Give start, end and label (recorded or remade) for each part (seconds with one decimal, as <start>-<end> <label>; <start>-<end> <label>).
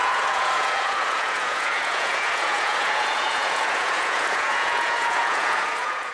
0.0-6.1 remade